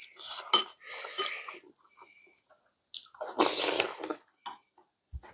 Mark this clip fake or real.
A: real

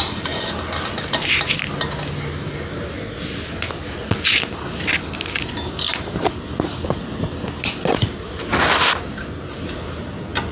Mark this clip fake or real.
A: real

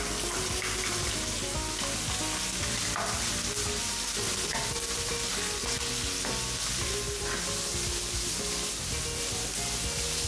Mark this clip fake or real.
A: real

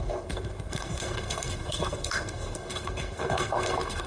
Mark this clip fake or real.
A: fake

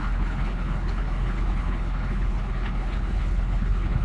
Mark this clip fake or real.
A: fake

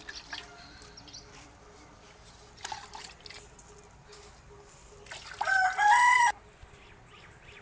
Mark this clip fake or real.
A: real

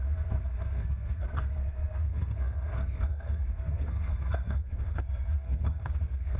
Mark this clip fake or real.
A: fake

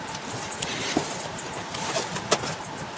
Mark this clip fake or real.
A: fake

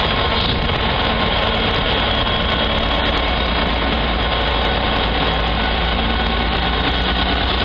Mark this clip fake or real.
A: real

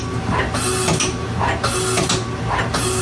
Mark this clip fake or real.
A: real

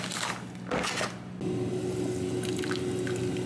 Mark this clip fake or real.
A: real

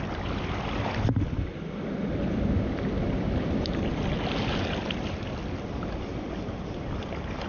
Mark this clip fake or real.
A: real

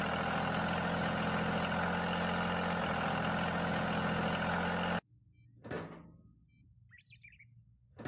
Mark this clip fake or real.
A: real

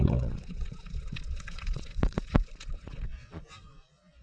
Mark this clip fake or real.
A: fake